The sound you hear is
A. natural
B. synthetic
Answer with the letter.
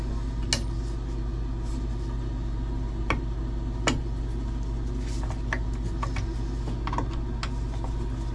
A